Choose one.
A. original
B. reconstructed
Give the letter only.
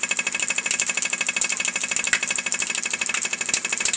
A